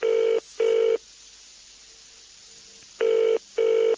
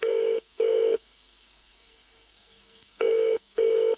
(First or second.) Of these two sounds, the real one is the first